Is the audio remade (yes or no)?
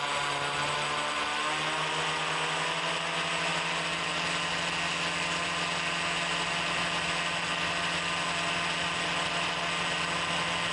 no